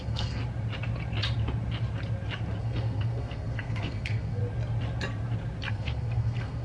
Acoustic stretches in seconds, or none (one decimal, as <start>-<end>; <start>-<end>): 0.4-2.6; 4.4-5.7